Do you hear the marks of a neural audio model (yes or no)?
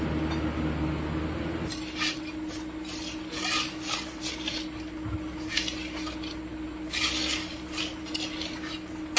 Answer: no